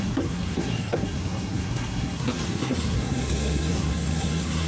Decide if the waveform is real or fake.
fake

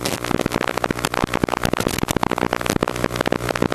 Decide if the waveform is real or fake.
real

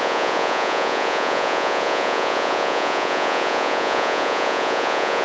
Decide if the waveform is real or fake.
fake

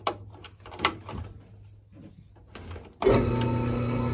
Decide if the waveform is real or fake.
real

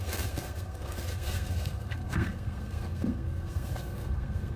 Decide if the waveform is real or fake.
fake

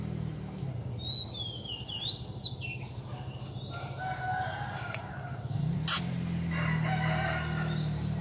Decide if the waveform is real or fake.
real